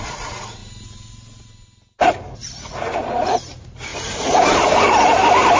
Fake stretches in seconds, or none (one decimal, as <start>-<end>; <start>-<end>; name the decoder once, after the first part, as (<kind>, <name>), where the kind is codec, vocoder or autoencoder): none